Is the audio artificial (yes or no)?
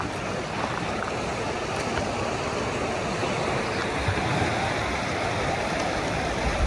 no